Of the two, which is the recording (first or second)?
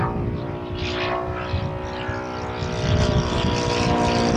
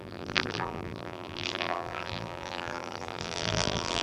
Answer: first